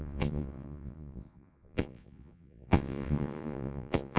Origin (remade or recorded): remade